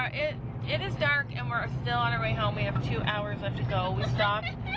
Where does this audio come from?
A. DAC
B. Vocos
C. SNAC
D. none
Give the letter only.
D